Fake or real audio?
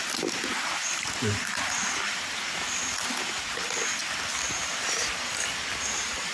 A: real